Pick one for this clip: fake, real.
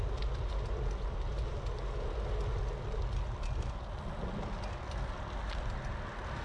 real